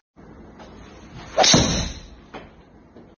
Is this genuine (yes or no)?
yes